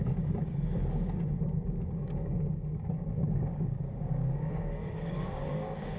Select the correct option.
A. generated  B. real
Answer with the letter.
A